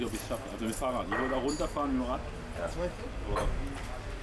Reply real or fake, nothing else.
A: real